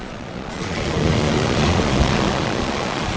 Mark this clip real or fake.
fake